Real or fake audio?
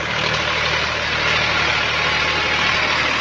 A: real